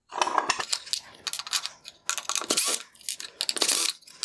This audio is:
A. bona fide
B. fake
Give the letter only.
A